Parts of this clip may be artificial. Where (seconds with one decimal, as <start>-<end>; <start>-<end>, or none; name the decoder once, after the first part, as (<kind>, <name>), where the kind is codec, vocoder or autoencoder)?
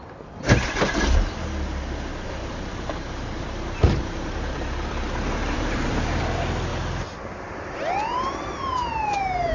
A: 2.1-6.2 (vocoder, BigVGAN v2)